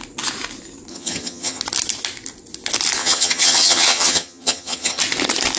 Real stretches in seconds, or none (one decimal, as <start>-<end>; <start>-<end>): 0.0-0.9; 1.6-3.0; 5.0-5.6